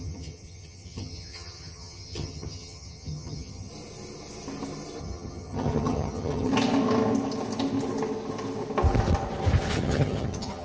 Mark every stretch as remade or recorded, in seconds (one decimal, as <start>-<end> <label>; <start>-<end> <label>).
0.0-3.7 remade; 3.7-5.0 recorded; 5.0-6.5 remade; 6.5-9.7 recorded; 9.7-10.6 remade